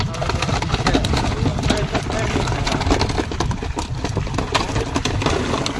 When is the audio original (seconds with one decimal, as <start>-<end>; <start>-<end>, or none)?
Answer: 0.0-1.5; 4.3-5.8